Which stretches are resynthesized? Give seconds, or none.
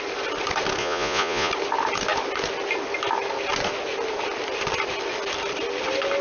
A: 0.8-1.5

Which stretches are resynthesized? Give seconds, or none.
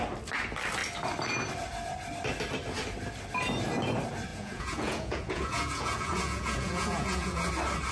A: 4.3-7.5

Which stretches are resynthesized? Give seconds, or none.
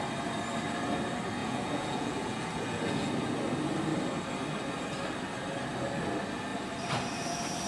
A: 1.4-3.1